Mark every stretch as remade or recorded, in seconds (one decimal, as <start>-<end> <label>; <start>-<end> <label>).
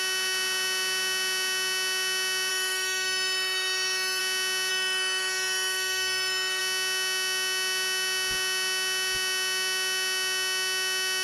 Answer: 0.0-2.5 recorded; 2.5-4.2 remade; 4.2-4.7 recorded; 4.7-6.6 remade; 6.6-11.2 recorded